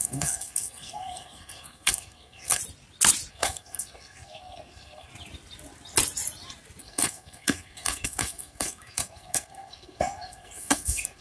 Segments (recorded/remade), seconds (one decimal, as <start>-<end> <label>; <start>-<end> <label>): 0.0-2.6 remade; 2.6-3.3 recorded; 3.3-5.1 remade; 5.1-6.8 recorded; 6.8-11.2 remade